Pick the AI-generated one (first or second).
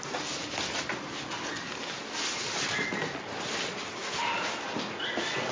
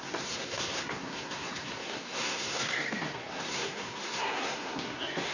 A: second